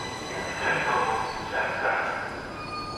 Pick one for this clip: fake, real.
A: real